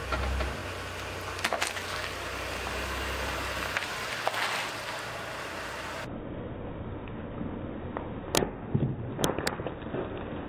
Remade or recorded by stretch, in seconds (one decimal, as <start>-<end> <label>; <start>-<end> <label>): 0.0-10.5 recorded